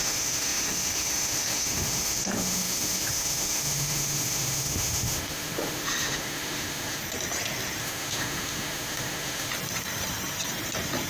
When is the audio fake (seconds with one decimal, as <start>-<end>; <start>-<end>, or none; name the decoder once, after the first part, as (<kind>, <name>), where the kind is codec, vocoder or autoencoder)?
0.0-7.0 (autoencoder, DAC-VAE); 7.8-9.5